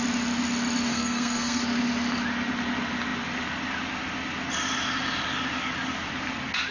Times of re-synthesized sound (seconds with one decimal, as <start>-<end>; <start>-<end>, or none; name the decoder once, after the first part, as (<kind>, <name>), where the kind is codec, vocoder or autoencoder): 0.9-1.6 (codec, SNAC)